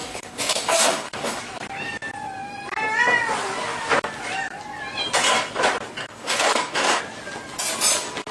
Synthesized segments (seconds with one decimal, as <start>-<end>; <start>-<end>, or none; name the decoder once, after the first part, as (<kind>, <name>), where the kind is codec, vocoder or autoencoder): 0.0-1.4 (codec, DAC); 6.0-7.0